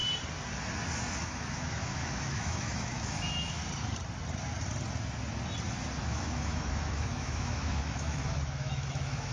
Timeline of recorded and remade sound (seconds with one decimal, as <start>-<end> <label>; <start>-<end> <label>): 0.0-1.2 recorded; 1.2-3.6 remade; 3.6-6.0 recorded; 6.0-9.3 remade